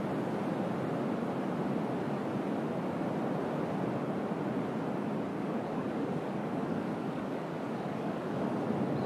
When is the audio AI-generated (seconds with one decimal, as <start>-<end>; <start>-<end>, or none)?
5.3-8.3